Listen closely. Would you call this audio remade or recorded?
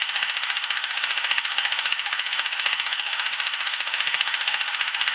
remade